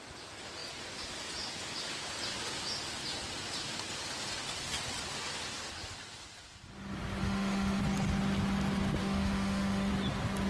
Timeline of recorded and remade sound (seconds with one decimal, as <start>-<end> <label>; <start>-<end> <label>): 0.0-7.2 recorded; 7.2-7.8 remade; 7.8-9.0 recorded; 9.0-9.9 remade; 9.9-10.5 recorded